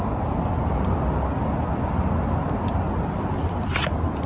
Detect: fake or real real